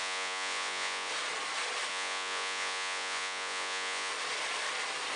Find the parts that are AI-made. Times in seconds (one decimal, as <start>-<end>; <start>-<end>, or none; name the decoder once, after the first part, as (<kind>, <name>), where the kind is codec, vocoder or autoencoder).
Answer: 0.0-1.1 (vocoder, Vocos); 1.9-4.1